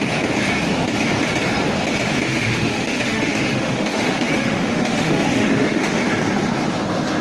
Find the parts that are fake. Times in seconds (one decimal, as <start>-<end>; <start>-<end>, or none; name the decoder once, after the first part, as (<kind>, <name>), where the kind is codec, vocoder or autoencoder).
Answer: 2.3-6.0 (autoencoder, DAC-VAE)